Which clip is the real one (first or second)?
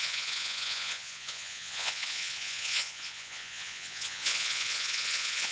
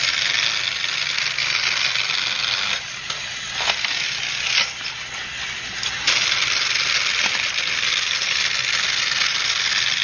second